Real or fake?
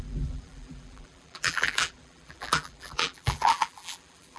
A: fake